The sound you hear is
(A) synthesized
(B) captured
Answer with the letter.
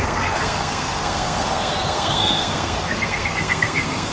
A